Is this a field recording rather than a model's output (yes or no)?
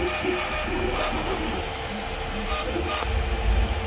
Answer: yes